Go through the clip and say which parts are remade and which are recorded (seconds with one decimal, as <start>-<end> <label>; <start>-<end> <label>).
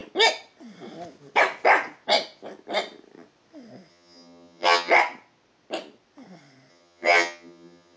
0.0-3.9 recorded; 3.9-4.9 remade; 4.9-6.7 recorded; 6.7-8.0 remade